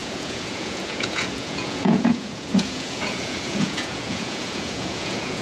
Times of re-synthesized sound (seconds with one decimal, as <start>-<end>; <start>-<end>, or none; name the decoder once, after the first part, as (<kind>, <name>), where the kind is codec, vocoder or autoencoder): 0.0-5.4 (vocoder, Vocos)